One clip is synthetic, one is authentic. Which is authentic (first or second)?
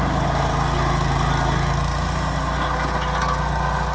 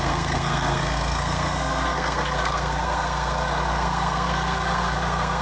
first